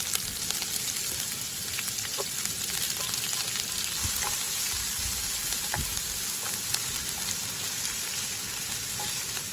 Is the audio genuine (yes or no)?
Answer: yes